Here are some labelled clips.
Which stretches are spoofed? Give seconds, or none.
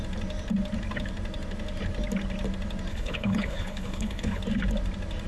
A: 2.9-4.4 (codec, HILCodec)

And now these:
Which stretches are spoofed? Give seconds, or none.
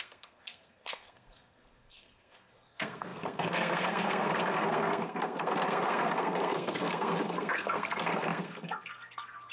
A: 0.0-9.5 (codec, SNAC)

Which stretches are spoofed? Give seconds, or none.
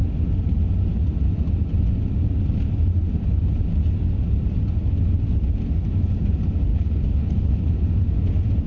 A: 6.7-7.7 (codec, HILCodec)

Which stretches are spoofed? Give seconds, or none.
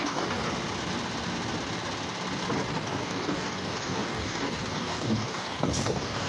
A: 0.0-0.4 (codec, DAC); 2.7-6.3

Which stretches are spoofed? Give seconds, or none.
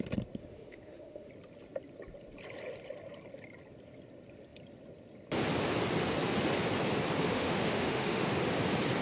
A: 0.4-1.3 (autoencoder, DAC-VAE); 7.3-8.3